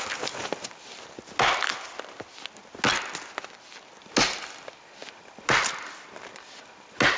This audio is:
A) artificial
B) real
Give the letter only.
B